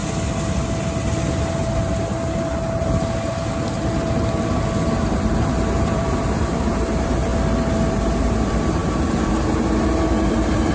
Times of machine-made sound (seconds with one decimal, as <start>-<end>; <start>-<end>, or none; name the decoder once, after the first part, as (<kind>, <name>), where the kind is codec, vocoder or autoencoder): 5.2-7.3 (vocoder, BigVGAN v2); 7.9-10.7